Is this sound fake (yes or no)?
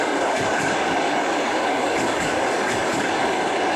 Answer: yes